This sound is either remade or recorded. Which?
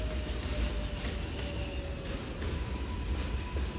recorded